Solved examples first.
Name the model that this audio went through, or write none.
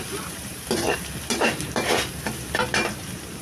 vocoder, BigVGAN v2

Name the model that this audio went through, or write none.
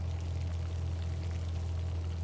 none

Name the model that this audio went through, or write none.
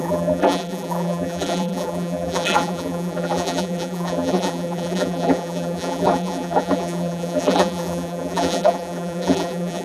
vocoder, BigVGAN v2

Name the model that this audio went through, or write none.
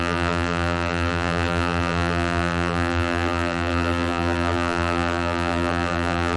vocoder, BigVGAN v2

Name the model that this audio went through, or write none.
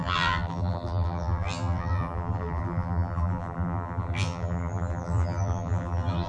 vocoder, BigVGAN v2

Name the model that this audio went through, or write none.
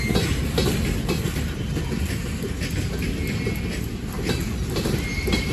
none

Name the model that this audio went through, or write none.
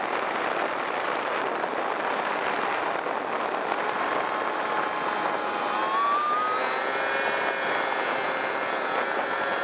none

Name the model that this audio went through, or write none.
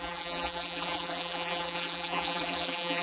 vocoder, BigVGAN v2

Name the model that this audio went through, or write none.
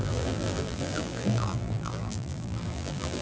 vocoder, BigVGAN v2